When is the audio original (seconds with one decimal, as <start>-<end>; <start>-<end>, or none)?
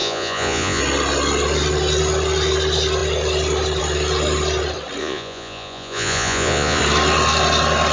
0.8-5.0; 6.8-7.9